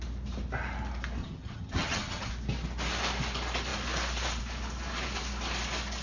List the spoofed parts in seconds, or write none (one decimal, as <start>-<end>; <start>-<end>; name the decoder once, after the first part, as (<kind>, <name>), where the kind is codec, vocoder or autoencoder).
1.2-2.3 (vocoder, HiFi-GAN)